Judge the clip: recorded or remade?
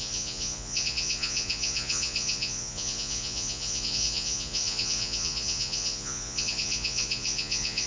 remade